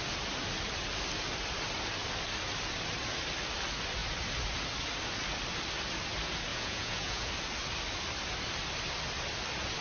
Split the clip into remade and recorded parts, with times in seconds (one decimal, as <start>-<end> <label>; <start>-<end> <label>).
0.0-6.5 recorded; 6.5-7.3 remade; 7.3-9.8 recorded